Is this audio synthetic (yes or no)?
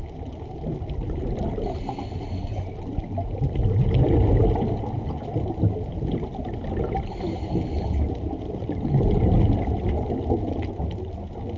no